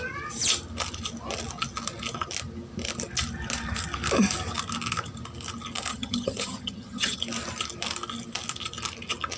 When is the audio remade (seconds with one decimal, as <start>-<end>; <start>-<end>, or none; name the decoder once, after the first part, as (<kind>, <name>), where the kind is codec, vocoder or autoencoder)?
5.9-7.2 (vocoder, HiFi-GAN)